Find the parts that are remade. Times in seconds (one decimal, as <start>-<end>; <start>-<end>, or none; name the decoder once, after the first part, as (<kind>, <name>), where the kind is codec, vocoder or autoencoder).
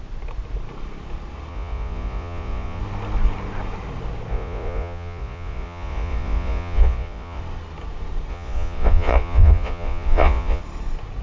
1.5-2.8 (vocoder, Vocos); 4.3-7.4; 8.3-10.6